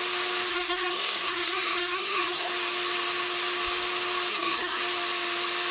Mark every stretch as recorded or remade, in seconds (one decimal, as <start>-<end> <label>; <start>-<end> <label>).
0.0-0.5 recorded; 0.5-2.5 remade; 2.5-4.3 recorded; 4.3-4.8 remade; 4.8-5.7 recorded